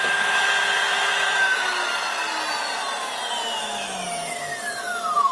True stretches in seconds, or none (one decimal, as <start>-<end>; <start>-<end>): 1.9-3.6